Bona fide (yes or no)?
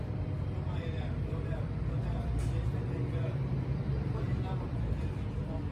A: no